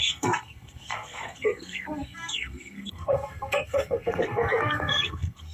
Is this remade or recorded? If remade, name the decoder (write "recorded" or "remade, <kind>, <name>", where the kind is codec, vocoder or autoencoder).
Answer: remade, codec, SNAC